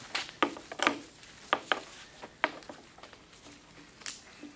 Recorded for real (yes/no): yes